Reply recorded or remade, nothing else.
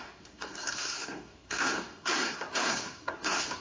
remade